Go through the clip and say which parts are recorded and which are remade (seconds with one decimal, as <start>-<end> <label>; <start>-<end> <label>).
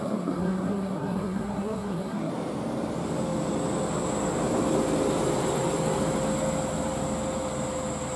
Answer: 0.0-2.3 remade; 2.3-8.2 recorded